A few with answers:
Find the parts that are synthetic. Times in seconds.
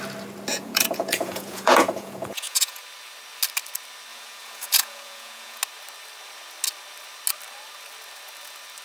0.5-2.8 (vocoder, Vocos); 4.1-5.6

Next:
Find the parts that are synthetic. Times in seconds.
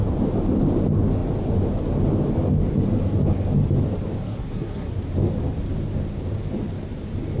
4.2-4.9 (codec, SNAC)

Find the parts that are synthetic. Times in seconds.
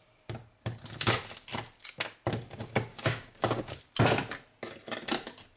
2.9-3.8 (codec, DAC)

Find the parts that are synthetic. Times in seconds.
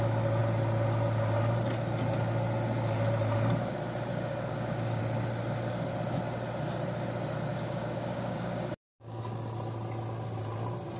4.1-5.0 (codec, DAC); 7.5-9.2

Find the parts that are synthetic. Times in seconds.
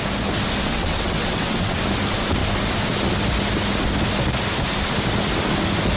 0.7-1.8 (vocoder, WaveNeXt)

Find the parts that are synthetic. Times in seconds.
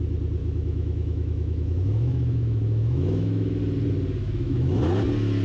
0.4-3.6 (autoencoder, DAC-VAE); 4.2-4.8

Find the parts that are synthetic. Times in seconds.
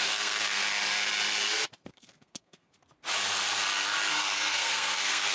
0.0-0.6 (codec, SNAC); 1.9-2.7; 4.1-5.3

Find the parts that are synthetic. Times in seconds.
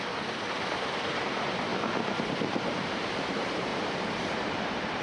0.0-1.7 (vocoder, BigVGAN v2); 2.3-3.7; 4.6-5.0